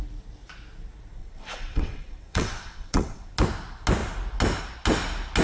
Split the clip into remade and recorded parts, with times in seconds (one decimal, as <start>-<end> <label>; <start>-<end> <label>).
0.0-1.2 recorded; 1.2-3.3 remade; 3.3-5.4 recorded